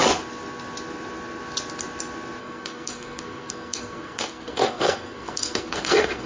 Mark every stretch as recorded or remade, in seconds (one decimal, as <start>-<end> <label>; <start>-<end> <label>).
0.0-2.4 recorded; 2.4-6.3 remade